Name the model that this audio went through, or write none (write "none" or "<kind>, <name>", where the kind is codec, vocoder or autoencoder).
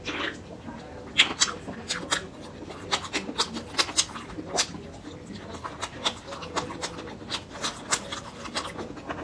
none